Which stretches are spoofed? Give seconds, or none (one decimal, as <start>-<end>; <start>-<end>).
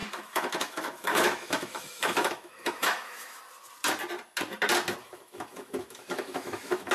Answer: 0.0-3.4; 5.0-6.9